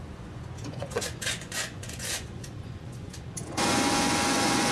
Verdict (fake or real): fake